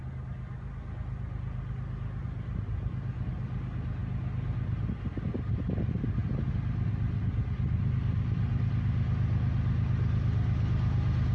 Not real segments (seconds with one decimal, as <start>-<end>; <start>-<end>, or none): none